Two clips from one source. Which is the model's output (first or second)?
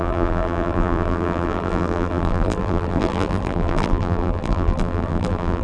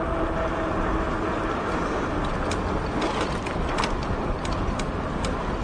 first